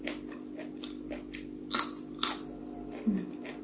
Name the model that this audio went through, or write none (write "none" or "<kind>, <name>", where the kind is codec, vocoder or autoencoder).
none